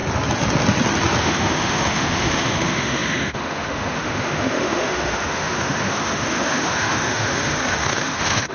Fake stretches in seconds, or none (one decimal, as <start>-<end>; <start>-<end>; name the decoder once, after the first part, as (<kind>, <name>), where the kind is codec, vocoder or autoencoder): 1.2-8.5 (autoencoder, DAC-VAE)